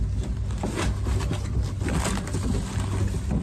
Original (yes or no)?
yes